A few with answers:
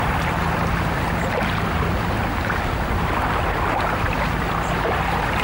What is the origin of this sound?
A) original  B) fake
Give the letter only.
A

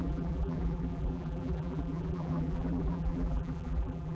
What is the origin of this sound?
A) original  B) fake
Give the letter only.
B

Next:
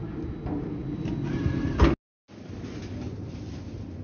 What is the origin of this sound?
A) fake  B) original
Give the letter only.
B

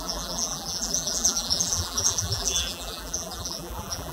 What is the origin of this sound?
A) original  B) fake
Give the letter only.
B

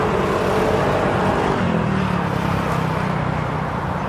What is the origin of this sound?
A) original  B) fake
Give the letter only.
A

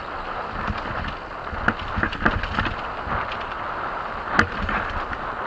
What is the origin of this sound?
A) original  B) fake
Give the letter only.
A